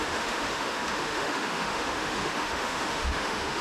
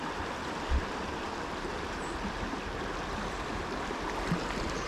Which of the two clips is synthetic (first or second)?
first